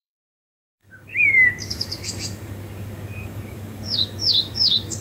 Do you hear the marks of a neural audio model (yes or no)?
yes